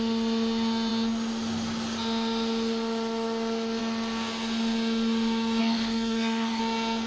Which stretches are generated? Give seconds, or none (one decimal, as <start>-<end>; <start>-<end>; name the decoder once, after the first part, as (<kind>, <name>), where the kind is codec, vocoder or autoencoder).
5.6-6.6 (codec, SNAC)